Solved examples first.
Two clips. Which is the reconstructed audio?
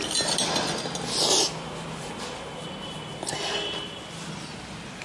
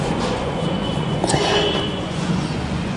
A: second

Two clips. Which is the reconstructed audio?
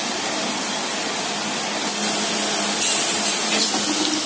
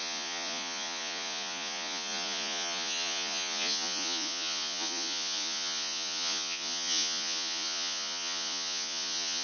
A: second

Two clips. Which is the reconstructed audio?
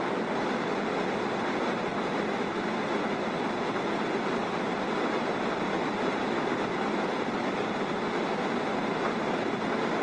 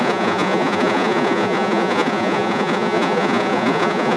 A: second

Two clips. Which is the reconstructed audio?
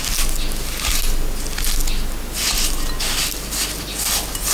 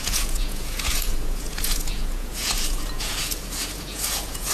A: second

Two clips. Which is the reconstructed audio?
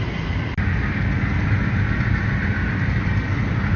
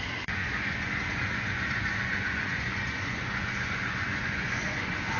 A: second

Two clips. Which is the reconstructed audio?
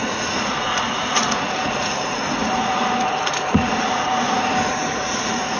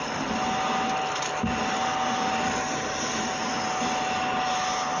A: first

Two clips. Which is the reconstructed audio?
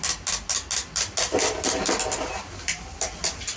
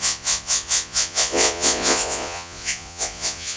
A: second